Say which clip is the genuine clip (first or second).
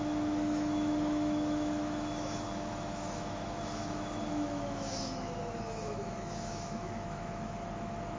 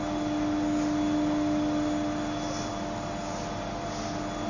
second